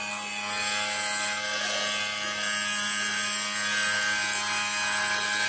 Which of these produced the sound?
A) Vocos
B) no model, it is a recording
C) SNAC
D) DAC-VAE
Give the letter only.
B